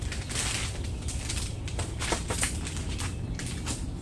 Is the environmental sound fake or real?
real